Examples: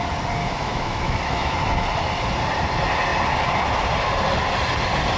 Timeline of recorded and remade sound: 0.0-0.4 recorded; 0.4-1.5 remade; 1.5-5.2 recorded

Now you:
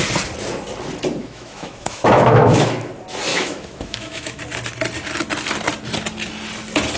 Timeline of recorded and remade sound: 0.0-1.2 recorded; 1.2-2.9 remade; 2.9-3.3 recorded; 3.3-4.4 remade; 4.4-7.0 recorded

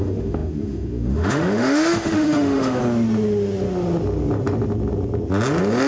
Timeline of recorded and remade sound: 0.0-2.8 remade; 2.8-5.9 recorded